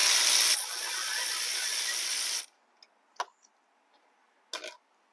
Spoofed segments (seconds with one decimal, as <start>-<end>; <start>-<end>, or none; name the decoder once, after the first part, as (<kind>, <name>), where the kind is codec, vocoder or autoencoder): none